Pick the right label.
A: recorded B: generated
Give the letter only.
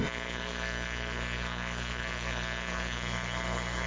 B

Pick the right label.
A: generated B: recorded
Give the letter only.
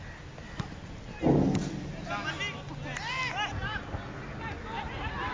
B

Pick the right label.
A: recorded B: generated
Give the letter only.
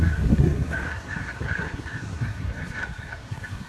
B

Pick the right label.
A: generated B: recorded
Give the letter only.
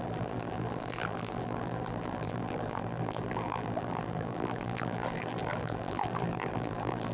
A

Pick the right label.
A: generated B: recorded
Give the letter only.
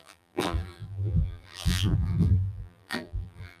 A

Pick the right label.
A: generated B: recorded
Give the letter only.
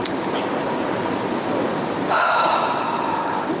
B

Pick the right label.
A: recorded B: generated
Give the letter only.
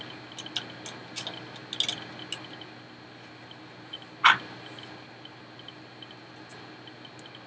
A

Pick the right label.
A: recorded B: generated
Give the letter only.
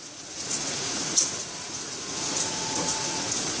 B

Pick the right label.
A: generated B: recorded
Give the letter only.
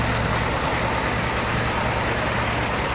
B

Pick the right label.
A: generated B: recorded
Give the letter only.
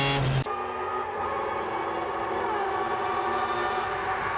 B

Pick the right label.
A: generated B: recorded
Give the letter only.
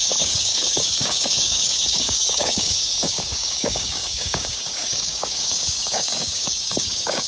A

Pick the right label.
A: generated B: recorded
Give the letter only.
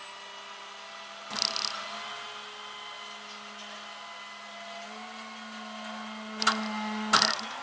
B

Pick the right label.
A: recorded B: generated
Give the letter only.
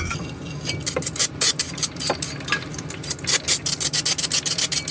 A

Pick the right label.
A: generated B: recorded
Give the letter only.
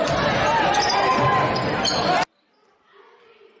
B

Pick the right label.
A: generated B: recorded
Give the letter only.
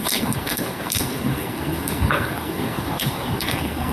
A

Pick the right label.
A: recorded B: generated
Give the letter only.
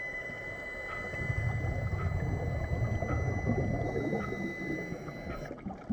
A